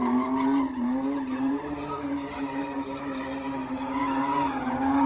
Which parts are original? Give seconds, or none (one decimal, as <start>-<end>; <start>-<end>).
2.6-5.1